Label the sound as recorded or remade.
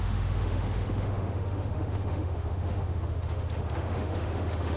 remade